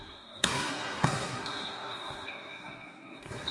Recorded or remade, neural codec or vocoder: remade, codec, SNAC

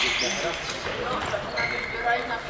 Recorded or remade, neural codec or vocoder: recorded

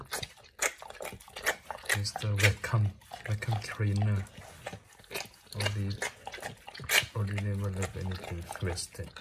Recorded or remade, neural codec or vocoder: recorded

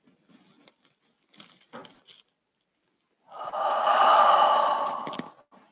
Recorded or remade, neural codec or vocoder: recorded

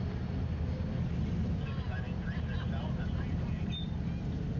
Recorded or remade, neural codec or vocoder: recorded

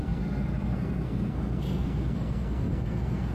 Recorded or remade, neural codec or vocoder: remade, codec, SNAC